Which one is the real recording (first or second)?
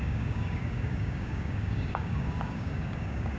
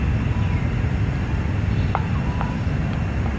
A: second